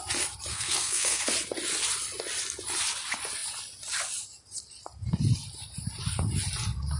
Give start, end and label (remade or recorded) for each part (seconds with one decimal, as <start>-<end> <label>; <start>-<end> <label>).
0.0-0.5 recorded; 0.5-1.2 remade; 1.2-7.0 recorded